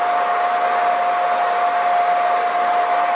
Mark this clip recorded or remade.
recorded